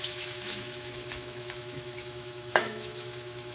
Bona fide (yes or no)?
no